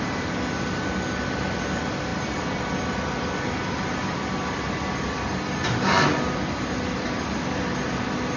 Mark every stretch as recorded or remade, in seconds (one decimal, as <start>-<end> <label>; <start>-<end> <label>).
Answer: 0.0-8.4 recorded